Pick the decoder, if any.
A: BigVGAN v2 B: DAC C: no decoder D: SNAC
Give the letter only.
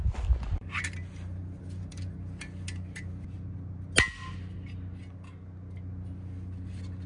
C